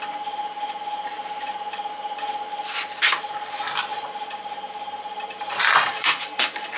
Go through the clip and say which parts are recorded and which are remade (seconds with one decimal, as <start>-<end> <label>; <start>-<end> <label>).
0.0-3.9 recorded; 3.9-5.5 remade; 5.5-5.9 recorded; 5.9-6.8 remade